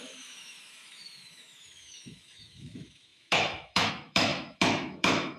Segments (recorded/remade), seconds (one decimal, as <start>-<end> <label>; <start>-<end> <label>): 0.0-5.4 remade